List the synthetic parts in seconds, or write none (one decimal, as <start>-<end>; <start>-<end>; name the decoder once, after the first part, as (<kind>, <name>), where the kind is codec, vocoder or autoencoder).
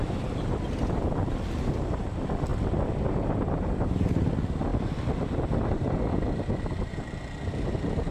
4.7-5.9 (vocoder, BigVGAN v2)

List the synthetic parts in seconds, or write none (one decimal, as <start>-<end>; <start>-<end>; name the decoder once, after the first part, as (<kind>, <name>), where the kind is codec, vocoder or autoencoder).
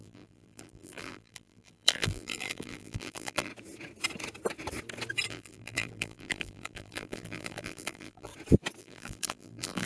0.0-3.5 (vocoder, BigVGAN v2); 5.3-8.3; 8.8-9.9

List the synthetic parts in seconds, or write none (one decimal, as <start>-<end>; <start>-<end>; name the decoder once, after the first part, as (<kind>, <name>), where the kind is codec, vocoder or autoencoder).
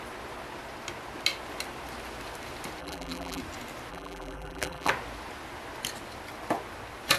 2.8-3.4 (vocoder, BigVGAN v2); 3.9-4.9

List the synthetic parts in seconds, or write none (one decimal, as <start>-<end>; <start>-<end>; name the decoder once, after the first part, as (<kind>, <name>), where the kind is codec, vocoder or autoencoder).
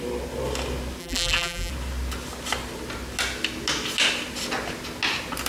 1.0-1.7 (vocoder, BigVGAN v2)